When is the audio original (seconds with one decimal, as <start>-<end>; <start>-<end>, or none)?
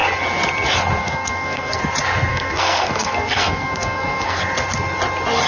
0.0-1.0; 1.8-2.3; 4.4-5.5